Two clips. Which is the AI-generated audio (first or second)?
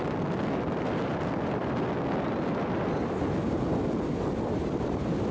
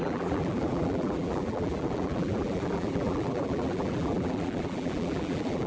second